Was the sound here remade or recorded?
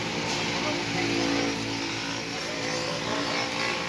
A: recorded